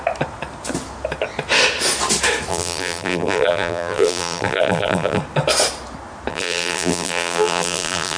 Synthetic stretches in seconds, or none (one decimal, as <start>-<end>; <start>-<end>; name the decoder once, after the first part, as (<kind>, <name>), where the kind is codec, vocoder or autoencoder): 2.5-5.2 (vocoder, BigVGAN v2); 6.3-8.2